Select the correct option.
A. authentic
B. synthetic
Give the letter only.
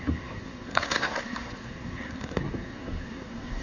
B